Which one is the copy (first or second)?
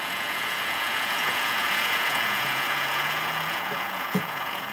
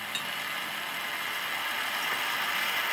first